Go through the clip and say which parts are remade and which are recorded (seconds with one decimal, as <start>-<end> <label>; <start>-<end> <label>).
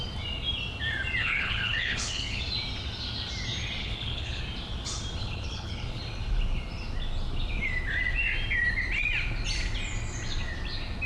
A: 0.0-1.2 recorded; 1.2-2.4 remade; 2.4-3.8 recorded; 3.8-4.4 remade; 4.4-5.2 recorded; 5.2-6.0 remade; 6.0-11.1 recorded